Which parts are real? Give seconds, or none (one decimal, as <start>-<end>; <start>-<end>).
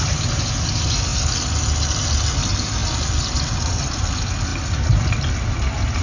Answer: 0.0-6.0